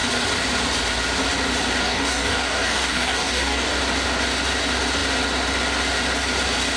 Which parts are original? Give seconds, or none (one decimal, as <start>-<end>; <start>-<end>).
0.0-1.8; 3.8-6.8

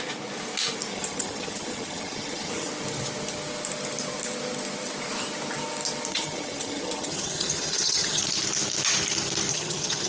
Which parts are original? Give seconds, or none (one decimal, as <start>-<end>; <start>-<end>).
0.0-0.9; 2.7-6.1; 8.2-9.5

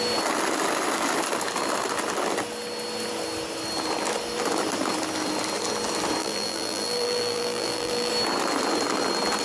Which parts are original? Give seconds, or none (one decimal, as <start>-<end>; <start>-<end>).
0.0-6.2; 8.1-9.4